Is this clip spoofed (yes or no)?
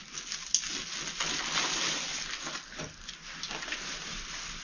no